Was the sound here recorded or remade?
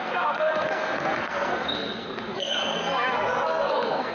remade